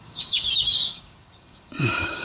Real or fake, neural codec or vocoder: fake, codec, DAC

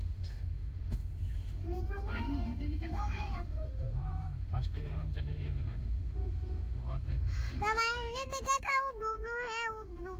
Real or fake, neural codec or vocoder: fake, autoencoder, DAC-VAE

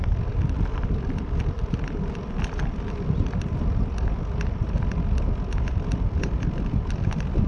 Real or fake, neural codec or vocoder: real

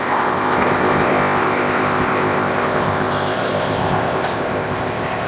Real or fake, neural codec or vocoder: fake, codec, ZipCodec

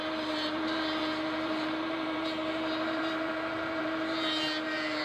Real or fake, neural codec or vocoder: fake, vocoder, BigVGAN v2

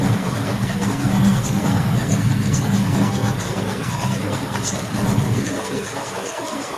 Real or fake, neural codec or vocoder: fake, codec, SNAC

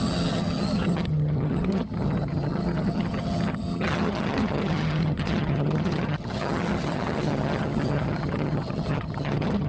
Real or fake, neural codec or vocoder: fake, vocoder, HiFi-GAN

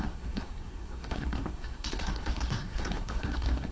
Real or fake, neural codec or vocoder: fake, codec, SNAC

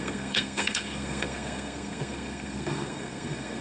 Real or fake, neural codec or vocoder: fake, codec, SNAC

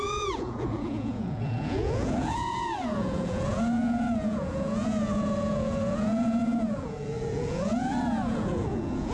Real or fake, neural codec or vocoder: fake, vocoder, Vocos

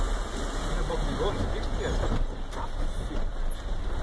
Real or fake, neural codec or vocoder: real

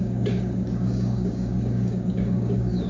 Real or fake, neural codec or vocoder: fake, codec, DAC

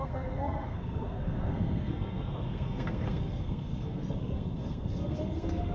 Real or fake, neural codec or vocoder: fake, codec, SNAC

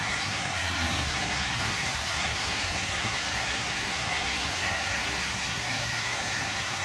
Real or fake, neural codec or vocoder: fake, codec, SNAC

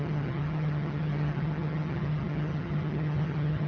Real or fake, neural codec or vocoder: fake, vocoder, HiFi-GAN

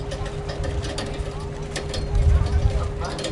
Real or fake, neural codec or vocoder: real